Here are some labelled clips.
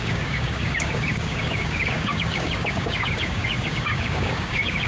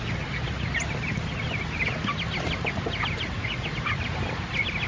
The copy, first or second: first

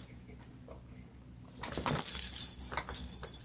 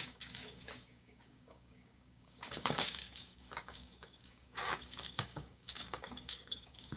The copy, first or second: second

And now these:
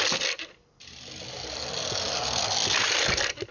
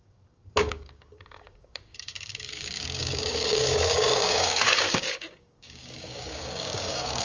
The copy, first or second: second